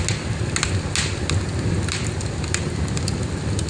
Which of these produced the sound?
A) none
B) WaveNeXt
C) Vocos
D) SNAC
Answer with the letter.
A